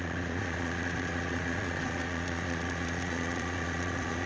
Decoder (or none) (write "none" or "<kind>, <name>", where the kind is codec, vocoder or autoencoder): vocoder, Vocos